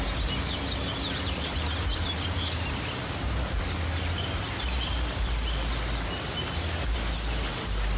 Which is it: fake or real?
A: real